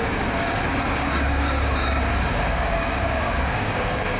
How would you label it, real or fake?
fake